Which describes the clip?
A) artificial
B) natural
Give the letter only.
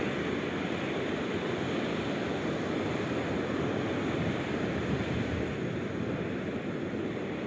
B